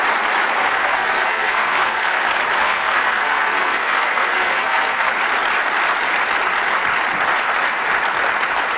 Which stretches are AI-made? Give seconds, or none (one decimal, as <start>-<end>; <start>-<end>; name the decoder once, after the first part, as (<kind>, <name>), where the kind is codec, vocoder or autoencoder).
0.6-2.2 (codec, SNAC); 2.6-5.1